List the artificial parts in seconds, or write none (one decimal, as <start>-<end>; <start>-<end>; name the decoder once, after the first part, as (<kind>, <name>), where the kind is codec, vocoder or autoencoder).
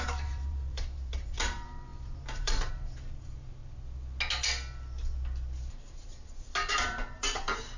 0.0-3.6 (vocoder, BigVGAN v2); 6.7-7.8